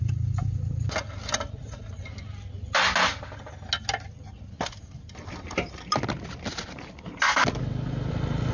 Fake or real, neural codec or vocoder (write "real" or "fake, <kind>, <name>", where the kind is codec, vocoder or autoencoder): real